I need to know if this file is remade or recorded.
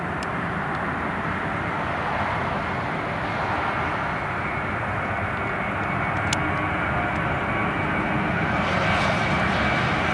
recorded